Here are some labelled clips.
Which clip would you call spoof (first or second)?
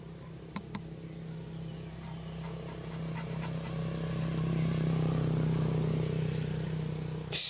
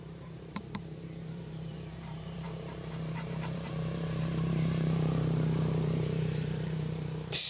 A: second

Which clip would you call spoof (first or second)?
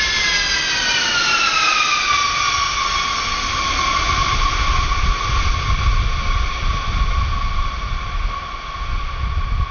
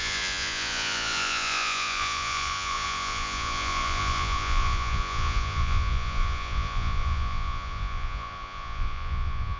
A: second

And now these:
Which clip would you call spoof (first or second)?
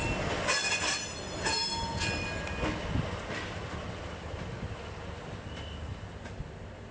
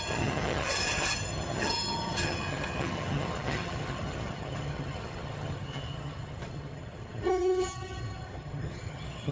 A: second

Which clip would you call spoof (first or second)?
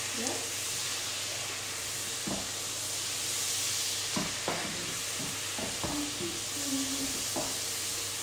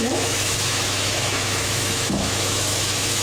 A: second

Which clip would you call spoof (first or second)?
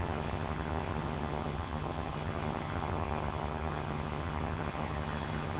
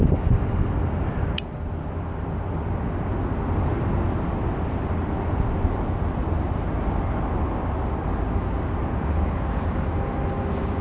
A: first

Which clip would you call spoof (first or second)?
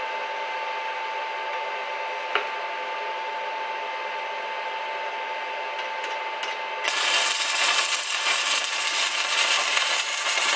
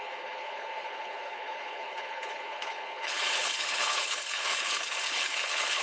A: second